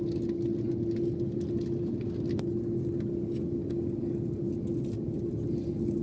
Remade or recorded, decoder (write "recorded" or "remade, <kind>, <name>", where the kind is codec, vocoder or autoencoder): recorded